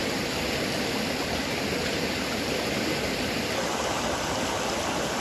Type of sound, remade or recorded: recorded